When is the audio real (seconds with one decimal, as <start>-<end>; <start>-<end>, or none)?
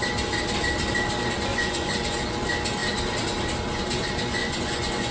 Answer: 0.0-1.5; 2.2-4.4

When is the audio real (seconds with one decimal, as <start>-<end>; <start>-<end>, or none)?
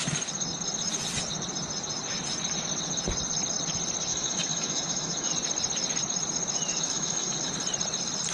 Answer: 0.0-4.1; 5.3-6.7; 7.5-8.3